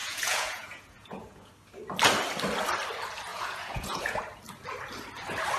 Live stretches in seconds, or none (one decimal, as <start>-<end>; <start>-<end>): 1.5-3.3; 4.2-5.6